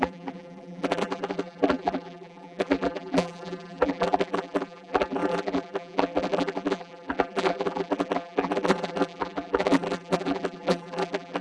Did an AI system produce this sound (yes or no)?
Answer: yes